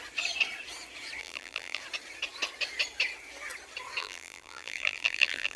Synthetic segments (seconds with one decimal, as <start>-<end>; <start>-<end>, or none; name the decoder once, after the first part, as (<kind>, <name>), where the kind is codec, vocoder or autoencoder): 1.2-1.8 (vocoder, BigVGAN v2); 4.0-5.6